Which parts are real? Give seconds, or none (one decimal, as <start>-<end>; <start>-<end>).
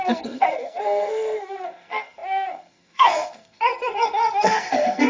none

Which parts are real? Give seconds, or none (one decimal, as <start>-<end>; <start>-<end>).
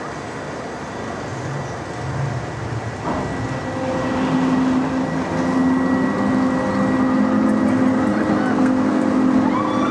0.0-8.5; 9.1-9.9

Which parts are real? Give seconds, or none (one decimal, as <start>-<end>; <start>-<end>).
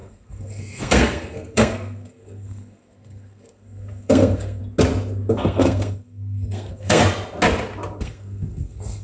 4.6-5.3; 7.0-8.0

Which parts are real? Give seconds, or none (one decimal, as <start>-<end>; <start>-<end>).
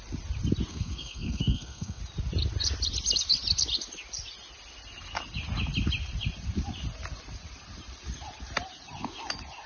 0.0-0.7; 2.0-9.7